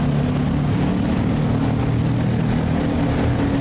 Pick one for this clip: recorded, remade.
recorded